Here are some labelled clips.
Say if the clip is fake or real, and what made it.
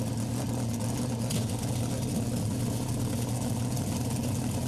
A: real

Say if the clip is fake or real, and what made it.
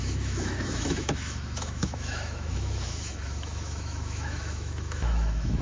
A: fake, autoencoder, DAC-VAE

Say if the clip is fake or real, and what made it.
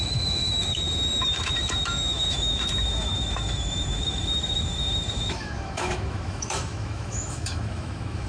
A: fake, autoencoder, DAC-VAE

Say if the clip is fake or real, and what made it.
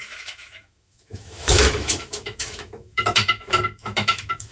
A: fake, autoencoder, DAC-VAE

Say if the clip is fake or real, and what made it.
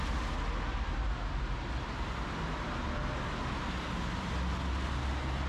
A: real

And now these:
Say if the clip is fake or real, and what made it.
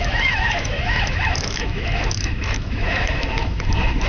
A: fake, autoencoder, DAC-VAE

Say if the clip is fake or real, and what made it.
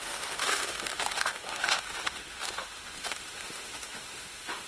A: fake, autoencoder, DAC-VAE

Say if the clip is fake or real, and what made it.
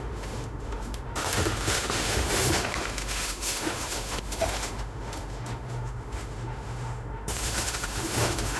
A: fake, autoencoder, DAC-VAE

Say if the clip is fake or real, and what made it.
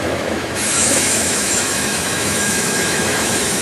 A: fake, autoencoder, DAC-VAE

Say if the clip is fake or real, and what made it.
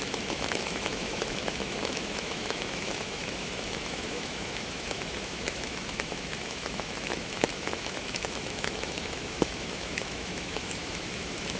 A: fake, autoencoder, DAC-VAE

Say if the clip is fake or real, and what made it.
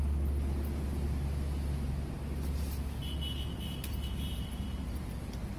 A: real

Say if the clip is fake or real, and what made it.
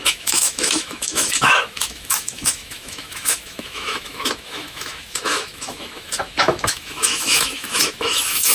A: fake, autoencoder, DAC-VAE